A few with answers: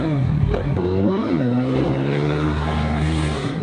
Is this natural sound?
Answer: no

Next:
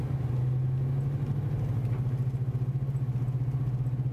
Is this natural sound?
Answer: yes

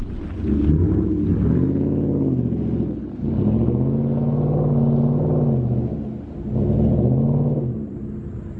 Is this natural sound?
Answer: yes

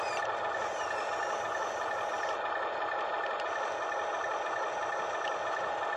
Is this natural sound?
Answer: yes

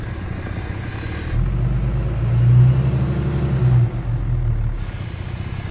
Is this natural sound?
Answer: yes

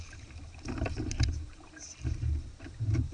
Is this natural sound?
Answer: no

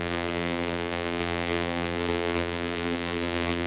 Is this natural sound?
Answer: no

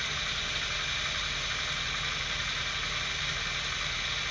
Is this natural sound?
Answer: yes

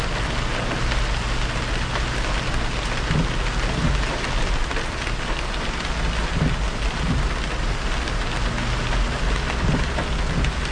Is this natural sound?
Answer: yes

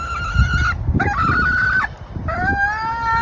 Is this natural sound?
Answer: yes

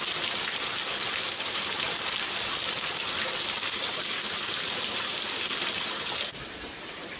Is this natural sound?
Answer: yes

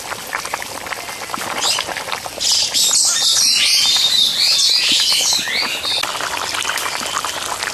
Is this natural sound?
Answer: yes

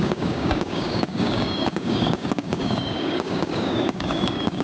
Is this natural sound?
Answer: no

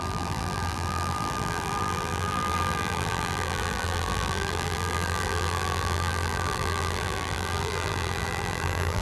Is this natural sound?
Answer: no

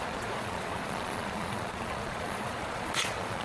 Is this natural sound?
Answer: no